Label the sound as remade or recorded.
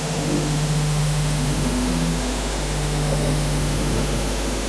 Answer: remade